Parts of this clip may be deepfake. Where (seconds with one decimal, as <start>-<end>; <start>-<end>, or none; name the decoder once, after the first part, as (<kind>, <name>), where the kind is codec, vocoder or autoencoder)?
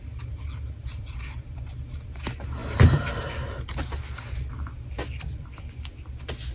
none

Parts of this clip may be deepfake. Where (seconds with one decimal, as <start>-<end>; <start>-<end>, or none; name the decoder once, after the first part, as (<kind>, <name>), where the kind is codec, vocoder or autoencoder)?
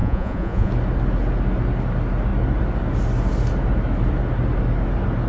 0.0-0.7 (vocoder, Vocos)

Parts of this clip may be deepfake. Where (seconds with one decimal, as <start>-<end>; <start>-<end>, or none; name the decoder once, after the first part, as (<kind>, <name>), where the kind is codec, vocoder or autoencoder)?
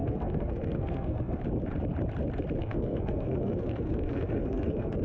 0.0-1.4 (codec, SNAC); 2.6-5.0